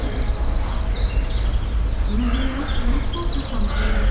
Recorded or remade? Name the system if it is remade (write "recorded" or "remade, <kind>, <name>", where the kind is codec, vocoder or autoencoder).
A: recorded